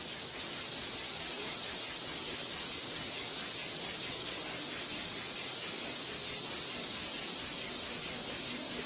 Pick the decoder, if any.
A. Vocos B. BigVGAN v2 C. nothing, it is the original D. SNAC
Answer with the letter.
C